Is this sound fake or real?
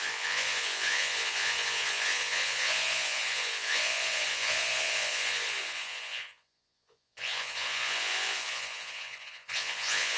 fake